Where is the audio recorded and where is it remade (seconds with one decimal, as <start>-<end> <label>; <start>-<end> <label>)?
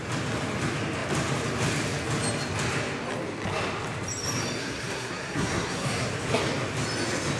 0.0-4.6 recorded; 4.6-6.1 remade; 6.1-7.4 recorded